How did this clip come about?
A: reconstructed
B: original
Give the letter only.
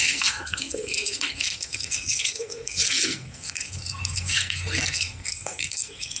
A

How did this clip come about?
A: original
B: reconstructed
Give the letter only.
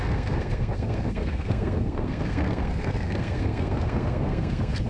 B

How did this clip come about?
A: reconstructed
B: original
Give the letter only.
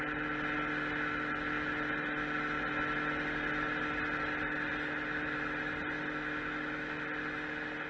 B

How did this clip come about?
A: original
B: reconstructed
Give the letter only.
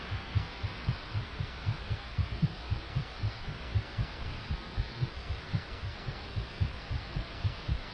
B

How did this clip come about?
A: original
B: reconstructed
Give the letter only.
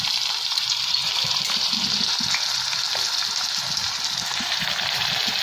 A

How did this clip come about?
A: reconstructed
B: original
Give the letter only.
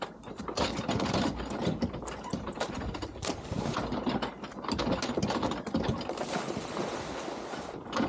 B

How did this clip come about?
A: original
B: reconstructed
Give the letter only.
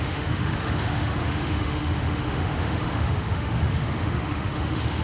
B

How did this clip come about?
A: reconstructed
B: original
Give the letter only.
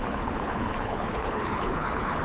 A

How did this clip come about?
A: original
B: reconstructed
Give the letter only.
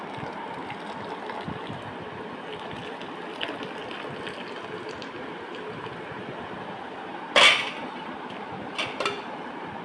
A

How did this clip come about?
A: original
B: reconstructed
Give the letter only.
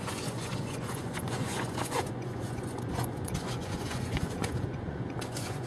B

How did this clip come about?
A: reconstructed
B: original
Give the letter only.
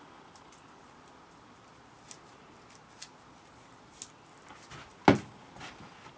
B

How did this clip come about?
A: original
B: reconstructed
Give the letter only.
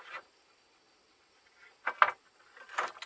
A